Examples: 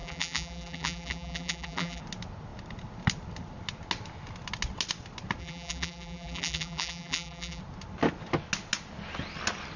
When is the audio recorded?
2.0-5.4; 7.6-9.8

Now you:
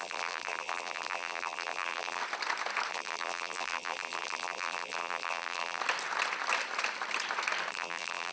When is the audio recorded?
2.2-2.9; 5.8-7.7

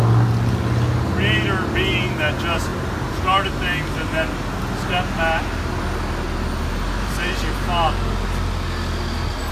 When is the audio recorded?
0.0-9.5

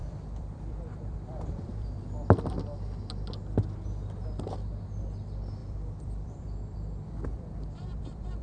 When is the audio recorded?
2.0-5.6